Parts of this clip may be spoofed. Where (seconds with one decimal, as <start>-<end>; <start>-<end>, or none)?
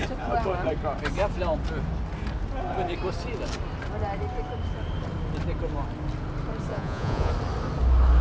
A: 6.7-7.3